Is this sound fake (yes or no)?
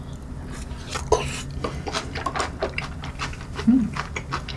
no